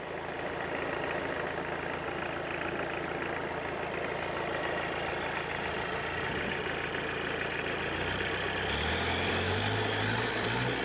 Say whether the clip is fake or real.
real